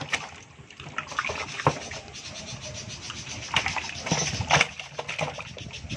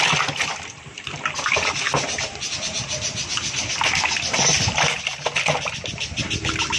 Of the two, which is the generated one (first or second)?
second